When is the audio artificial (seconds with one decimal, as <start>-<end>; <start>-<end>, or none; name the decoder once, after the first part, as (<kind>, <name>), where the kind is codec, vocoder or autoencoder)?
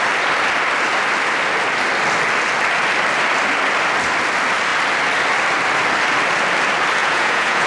7.0-7.7 (vocoder, Vocos)